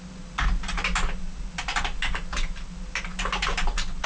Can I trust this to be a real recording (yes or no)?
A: yes